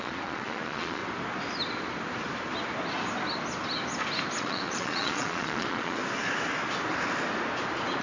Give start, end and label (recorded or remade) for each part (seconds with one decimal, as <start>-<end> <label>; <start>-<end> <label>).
0.0-1.0 remade; 1.0-4.4 recorded; 4.4-6.0 remade; 6.0-8.0 recorded